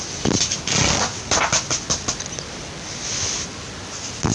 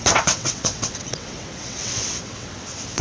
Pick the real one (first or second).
first